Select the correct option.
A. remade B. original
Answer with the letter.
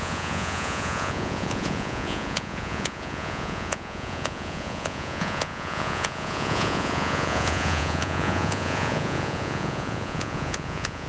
A